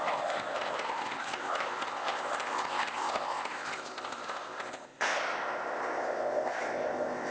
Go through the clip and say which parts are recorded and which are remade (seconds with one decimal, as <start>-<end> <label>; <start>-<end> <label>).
0.0-7.3 remade